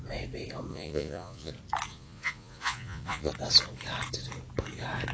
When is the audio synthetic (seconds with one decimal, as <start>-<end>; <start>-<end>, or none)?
0.7-1.5; 1.9-3.3